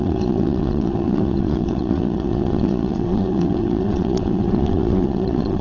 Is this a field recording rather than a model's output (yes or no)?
no